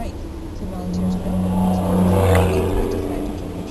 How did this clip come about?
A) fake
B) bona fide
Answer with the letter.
B